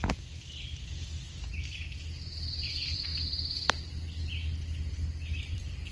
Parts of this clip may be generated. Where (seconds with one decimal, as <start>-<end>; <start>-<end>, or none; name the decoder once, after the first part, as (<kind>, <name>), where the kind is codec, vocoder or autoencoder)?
2.5-3.1 (vocoder, BigVGAN v2); 5.4-5.9